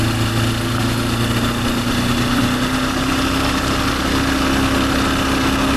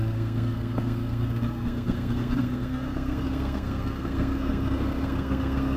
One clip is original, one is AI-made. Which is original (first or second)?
first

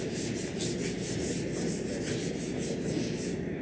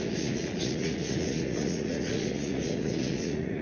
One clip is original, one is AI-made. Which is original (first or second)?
first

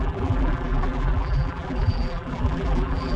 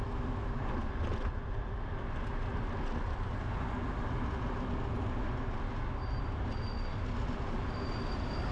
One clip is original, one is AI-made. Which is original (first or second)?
second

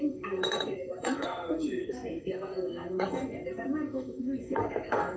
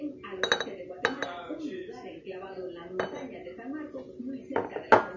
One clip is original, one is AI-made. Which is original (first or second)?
second